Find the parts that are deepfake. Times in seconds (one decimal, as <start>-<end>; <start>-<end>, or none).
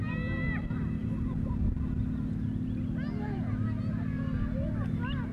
none